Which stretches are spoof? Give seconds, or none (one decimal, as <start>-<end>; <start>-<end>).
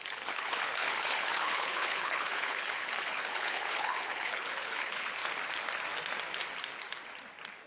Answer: 0.0-5.2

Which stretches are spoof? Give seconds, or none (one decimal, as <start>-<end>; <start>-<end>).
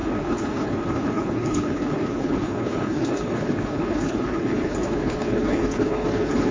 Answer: 0.0-6.5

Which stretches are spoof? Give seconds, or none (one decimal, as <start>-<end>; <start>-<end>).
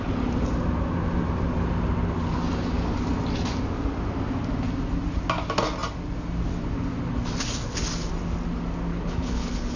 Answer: 8.9-9.8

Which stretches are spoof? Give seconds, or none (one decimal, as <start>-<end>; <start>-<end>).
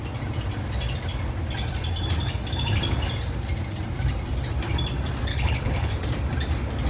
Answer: 5.3-5.9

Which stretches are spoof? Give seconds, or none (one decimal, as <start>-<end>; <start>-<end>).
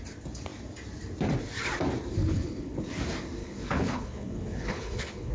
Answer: 2.2-3.0; 3.4-5.3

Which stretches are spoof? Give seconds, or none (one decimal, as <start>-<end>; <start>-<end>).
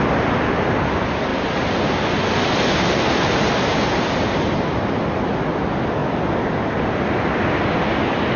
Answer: none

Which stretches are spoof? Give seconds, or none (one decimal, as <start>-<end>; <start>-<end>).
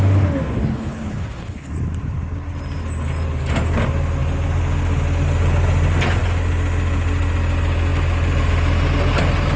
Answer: 0.7-1.7